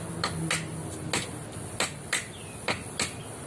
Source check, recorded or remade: recorded